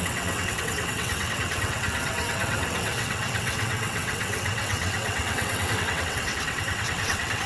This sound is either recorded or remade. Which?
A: remade